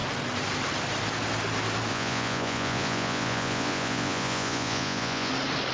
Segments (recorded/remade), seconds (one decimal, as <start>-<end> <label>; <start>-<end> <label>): 0.0-1.9 recorded; 1.9-5.3 remade; 5.3-5.7 recorded